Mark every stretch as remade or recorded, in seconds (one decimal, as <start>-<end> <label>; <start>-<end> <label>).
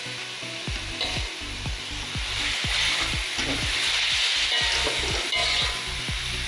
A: 0.0-5.4 recorded; 5.4-6.0 remade; 6.0-6.5 recorded